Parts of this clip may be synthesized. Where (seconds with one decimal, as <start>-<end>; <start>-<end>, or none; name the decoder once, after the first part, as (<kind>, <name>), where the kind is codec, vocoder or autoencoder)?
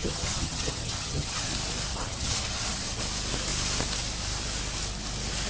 0.0-1.5 (vocoder, HiFi-GAN); 1.9-3.0